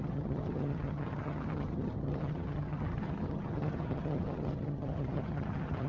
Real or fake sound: fake